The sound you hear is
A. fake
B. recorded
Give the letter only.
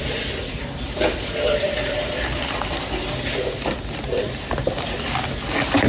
B